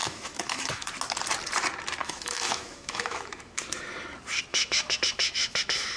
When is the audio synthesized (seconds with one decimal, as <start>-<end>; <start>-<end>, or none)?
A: 0.0-0.9; 2.0-3.6; 4.5-6.0